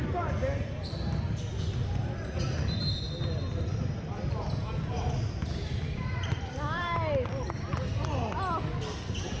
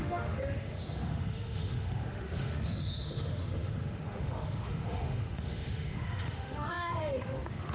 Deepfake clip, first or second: second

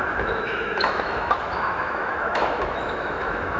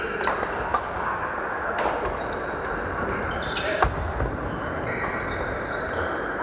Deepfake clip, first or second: first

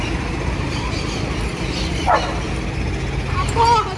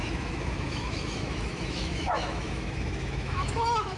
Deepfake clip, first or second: second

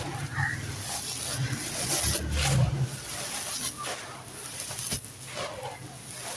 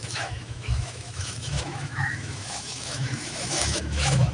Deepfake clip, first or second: second